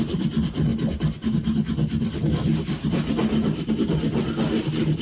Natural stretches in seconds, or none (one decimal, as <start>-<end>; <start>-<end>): 0.0-5.0